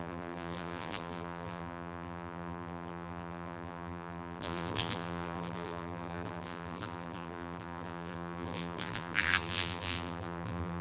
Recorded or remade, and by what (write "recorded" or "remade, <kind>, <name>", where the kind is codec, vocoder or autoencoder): remade, vocoder, BigVGAN v2